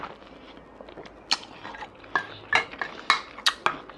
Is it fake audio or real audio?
real